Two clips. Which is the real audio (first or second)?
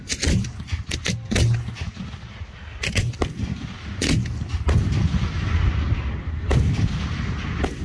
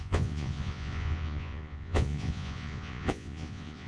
first